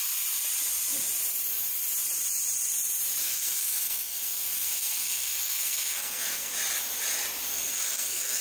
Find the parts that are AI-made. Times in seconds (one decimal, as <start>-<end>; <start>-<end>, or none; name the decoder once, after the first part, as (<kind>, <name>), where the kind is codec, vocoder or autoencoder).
3.2-6.5 (codec, SNAC); 7.5-8.4